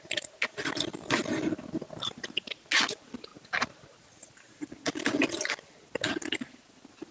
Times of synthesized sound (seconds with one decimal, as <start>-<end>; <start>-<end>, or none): 3.3-4.3